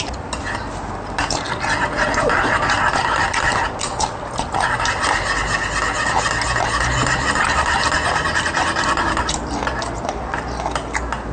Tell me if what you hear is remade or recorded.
recorded